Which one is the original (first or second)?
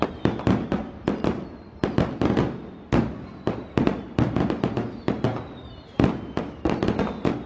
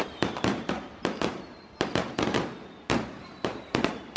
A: first